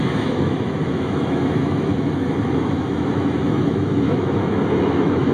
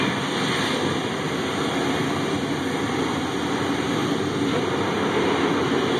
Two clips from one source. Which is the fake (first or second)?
first